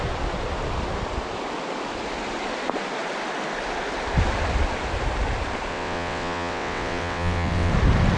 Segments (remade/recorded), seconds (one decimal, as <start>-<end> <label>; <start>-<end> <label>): 0.0-5.7 recorded; 5.7-7.7 remade; 7.7-8.2 recorded